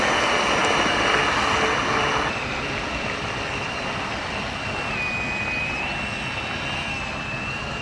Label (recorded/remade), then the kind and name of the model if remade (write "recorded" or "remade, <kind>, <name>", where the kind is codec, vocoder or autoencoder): recorded